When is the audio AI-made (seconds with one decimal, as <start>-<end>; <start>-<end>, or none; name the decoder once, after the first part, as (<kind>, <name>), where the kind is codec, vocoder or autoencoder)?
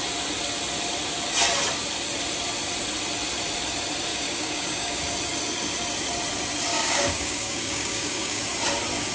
4.1-5.0 (codec, DAC); 6.7-8.4